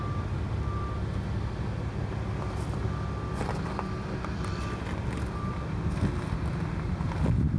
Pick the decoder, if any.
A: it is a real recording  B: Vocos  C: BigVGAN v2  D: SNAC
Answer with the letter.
A